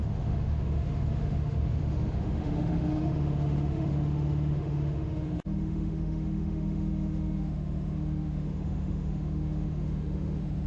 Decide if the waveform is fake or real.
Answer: fake